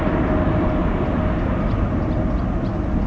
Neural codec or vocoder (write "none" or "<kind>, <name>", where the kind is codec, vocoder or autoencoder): none